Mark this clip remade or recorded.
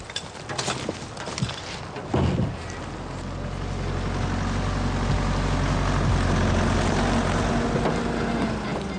recorded